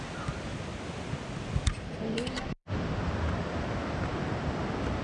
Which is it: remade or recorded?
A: recorded